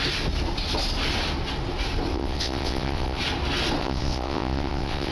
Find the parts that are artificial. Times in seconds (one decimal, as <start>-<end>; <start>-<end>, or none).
2.1-3.2; 3.8-5.1